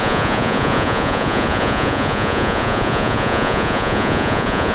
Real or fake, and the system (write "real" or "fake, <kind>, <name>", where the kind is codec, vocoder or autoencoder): fake, vocoder, Vocos